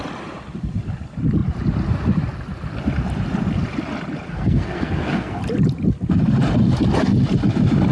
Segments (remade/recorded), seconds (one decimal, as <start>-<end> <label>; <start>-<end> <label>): 0.0-4.3 recorded; 4.3-5.4 remade; 5.4-7.9 recorded